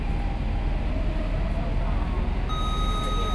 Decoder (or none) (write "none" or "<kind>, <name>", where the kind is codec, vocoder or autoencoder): none